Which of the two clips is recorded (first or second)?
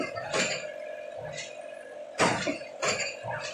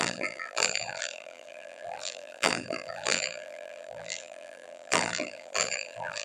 first